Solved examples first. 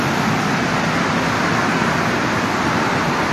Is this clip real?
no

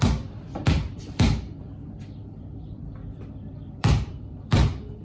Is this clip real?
no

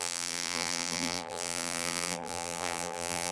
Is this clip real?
no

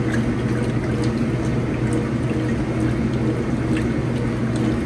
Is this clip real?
yes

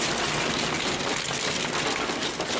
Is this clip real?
yes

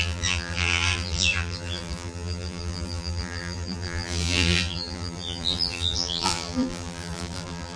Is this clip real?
no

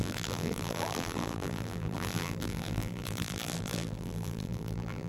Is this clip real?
no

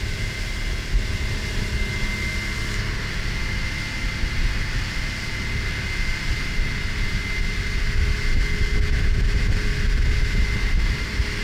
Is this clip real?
yes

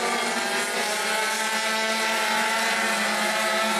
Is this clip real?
yes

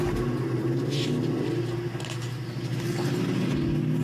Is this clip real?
yes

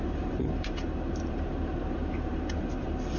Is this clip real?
no